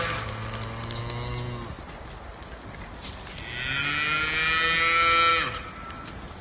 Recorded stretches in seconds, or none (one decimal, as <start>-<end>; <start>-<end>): 0.0-6.4